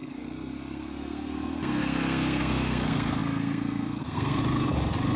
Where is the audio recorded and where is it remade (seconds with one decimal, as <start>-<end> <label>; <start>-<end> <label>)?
0.0-4.4 remade; 4.4-5.2 recorded

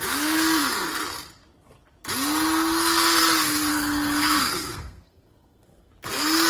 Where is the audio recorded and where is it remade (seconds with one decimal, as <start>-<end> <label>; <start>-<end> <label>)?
0.0-3.7 recorded; 3.7-5.9 remade; 5.9-6.5 recorded